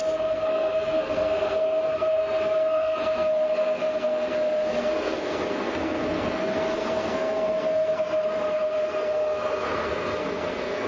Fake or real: fake